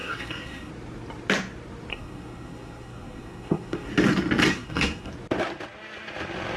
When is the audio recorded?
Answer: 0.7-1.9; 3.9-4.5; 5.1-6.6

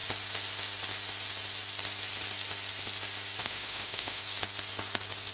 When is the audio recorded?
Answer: 0.0-3.4; 4.2-5.3

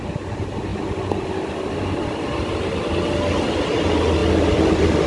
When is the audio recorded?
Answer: 0.0-5.1

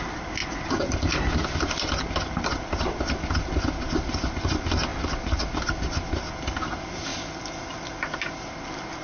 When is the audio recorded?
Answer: 0.0-9.0